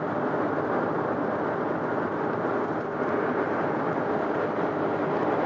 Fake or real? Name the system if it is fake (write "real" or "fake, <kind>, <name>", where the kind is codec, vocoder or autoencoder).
real